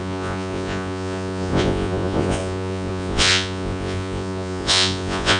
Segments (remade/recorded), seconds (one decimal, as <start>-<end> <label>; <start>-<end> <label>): 0.0-5.4 remade

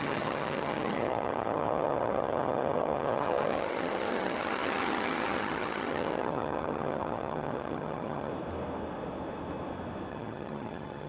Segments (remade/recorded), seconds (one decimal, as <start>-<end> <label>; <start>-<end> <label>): 0.0-8.3 remade; 8.3-10.1 recorded; 10.1-11.1 remade

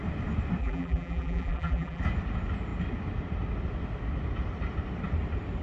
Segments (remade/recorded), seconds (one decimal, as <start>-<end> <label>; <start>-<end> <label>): 0.0-0.6 recorded; 0.6-2.0 remade; 2.0-5.6 recorded

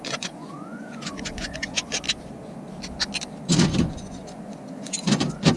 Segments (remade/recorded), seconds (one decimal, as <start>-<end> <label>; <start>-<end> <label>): 0.0-1.9 remade; 1.9-3.8 recorded; 3.8-5.6 remade